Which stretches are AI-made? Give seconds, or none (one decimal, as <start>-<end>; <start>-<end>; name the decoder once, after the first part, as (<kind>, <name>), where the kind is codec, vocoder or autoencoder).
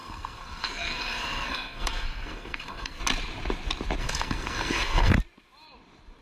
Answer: 0.0-3.0 (codec, SNAC); 4.0-5.1